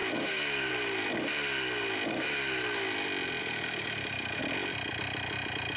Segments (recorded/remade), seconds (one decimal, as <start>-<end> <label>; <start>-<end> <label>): 0.0-0.7 remade; 0.7-3.4 recorded; 3.4-4.4 remade; 4.4-5.8 recorded